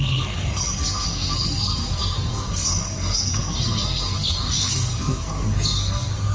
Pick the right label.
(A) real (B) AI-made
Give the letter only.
B